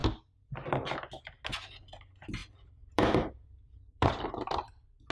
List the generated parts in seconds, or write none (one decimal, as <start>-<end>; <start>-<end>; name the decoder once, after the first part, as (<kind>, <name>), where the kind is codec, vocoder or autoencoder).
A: 2.4-4.2 (vocoder, BigVGAN v2)